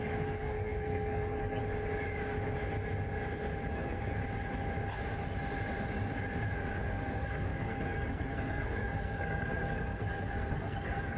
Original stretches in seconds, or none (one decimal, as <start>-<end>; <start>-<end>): 1.6-3.7; 4.2-6.8